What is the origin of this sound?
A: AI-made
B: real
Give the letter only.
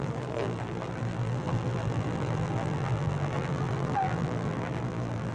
A